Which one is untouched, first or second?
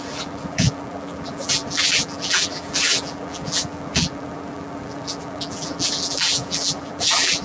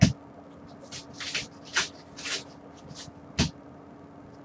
second